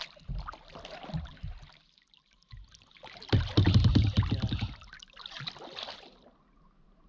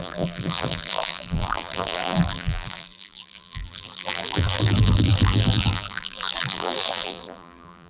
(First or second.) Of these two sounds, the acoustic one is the first